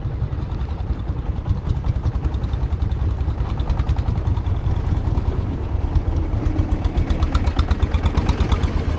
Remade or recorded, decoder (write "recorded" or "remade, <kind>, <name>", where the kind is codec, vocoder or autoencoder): recorded